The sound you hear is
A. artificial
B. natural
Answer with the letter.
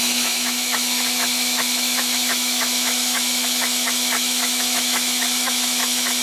A